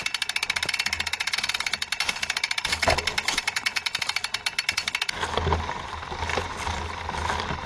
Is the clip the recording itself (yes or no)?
yes